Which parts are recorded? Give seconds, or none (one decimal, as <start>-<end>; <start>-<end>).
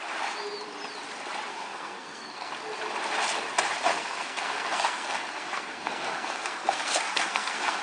0.0-1.5; 2.5-3.9